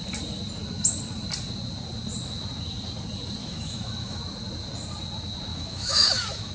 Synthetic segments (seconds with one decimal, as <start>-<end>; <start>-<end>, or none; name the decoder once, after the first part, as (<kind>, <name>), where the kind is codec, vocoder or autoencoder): 3.4-4.2 (autoencoder, DAC-VAE); 5.5-6.5